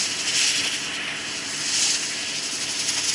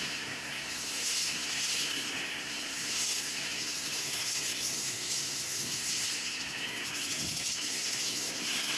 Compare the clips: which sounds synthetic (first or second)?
second